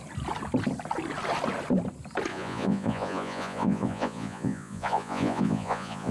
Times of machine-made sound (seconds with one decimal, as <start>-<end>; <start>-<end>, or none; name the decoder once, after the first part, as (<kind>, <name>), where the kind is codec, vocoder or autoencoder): 2.3-6.1 (vocoder, Vocos)